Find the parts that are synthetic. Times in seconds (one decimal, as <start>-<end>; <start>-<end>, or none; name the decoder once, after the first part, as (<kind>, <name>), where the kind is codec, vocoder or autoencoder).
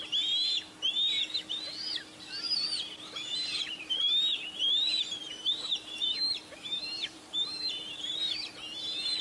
3.3-8.1 (vocoder, BigVGAN v2)